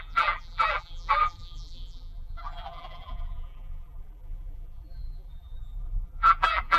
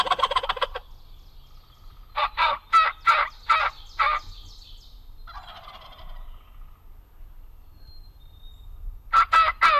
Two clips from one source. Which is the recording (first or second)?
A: second